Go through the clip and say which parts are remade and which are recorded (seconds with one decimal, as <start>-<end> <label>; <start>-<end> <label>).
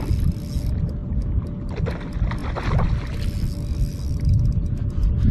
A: 0.0-5.3 recorded